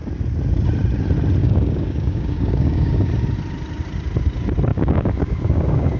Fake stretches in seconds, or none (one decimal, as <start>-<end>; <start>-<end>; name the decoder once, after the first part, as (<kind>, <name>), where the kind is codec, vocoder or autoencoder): 1.4-3.1 (codec, DAC); 4.7-6.0